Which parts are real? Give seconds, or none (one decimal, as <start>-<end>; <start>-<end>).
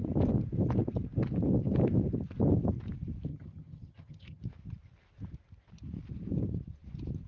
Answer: 0.0-3.3; 4.4-7.3